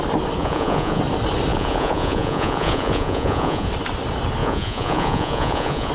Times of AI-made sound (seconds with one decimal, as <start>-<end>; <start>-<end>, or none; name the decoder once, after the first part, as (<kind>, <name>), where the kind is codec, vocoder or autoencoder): 0.4-1.0 (vocoder, Vocos); 1.5-3.7; 4.4-5.9